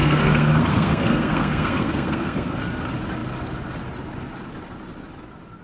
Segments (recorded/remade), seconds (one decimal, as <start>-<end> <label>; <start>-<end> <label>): 0.0-2.6 remade; 2.6-5.6 recorded

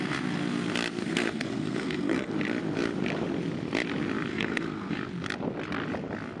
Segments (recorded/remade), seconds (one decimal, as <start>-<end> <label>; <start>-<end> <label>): 0.0-1.0 recorded; 1.0-2.3 remade; 2.3-4.3 recorded; 4.3-4.9 remade; 4.9-6.4 recorded

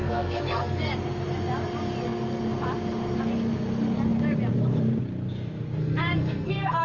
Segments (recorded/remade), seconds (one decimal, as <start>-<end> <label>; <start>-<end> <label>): 0.0-0.9 remade; 0.9-5.8 recorded; 5.8-6.8 remade

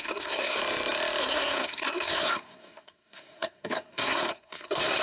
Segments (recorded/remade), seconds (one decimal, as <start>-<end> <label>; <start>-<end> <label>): 0.0-0.6 remade; 0.6-1.2 recorded; 1.2-5.0 remade

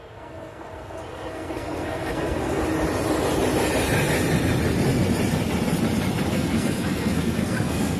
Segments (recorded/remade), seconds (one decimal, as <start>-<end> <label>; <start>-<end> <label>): 0.0-2.6 remade; 2.6-6.3 recorded; 6.3-8.0 remade